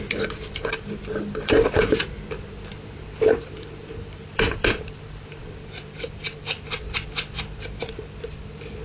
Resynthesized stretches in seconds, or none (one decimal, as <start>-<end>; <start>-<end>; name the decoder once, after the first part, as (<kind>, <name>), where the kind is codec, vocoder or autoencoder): 0.0-8.8 (vocoder, BigVGAN v2)